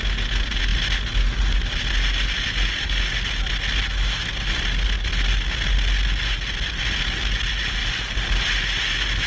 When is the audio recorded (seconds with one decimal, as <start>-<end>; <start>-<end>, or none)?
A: 0.0-9.3